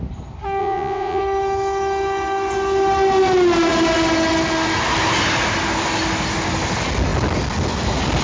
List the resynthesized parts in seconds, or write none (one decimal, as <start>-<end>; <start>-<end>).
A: 0.6-1.2